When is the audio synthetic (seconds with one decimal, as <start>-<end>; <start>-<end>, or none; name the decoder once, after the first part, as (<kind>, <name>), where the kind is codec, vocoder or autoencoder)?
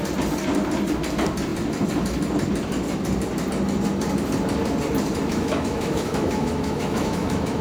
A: 5.3-7.6 (autoencoder, DAC-VAE)